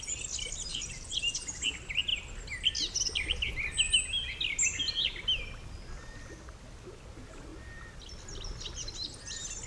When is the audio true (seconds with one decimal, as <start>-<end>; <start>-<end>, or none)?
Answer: 0.0-0.7; 1.2-9.7